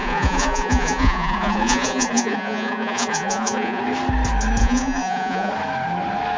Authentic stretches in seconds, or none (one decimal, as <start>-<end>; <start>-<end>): 3.8-4.6; 5.5-6.4